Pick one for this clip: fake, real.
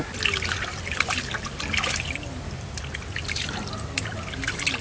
real